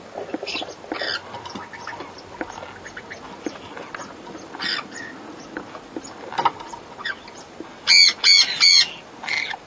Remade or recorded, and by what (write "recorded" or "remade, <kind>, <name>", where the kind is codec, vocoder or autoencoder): recorded